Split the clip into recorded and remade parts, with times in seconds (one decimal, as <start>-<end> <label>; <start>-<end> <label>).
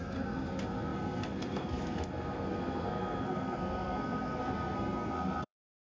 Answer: 0.0-5.9 remade